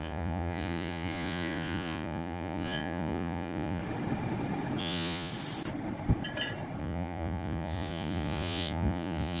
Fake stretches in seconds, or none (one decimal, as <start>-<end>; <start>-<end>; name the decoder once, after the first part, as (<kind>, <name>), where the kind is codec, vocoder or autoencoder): 0.0-3.8 (vocoder, Vocos); 4.8-5.3; 6.8-9.4